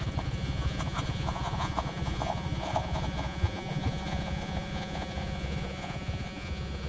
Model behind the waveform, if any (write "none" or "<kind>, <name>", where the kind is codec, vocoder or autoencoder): vocoder, Vocos